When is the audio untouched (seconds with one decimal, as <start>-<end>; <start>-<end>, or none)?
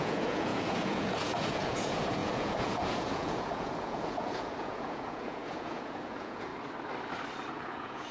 6.5-7.5